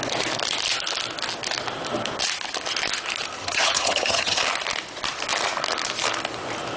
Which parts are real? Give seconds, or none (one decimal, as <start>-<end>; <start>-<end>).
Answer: 0.0-3.4; 4.4-6.8

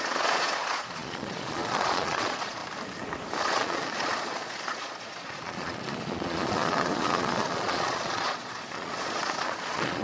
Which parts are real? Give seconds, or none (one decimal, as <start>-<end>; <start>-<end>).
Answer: 2.6-3.4